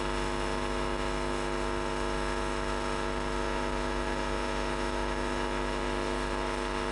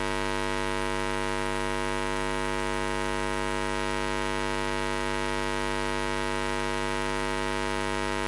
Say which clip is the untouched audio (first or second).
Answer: second